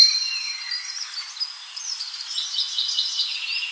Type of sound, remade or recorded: recorded